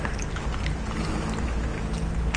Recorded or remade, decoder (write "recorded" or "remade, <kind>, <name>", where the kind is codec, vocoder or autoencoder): recorded